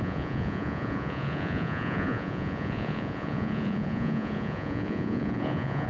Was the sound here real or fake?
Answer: fake